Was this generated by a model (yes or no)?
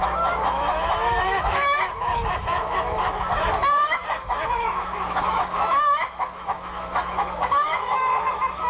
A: yes